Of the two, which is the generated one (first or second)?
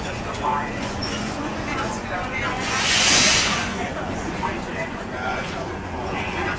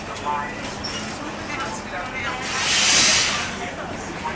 first